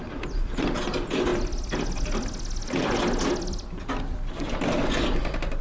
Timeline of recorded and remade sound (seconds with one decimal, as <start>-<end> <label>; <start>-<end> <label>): 0.0-5.6 recorded